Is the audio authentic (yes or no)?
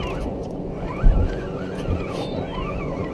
no